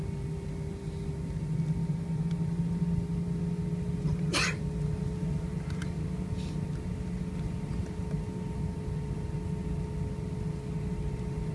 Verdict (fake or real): real